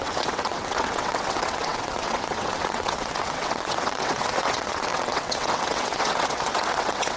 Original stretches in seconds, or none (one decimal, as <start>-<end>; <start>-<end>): none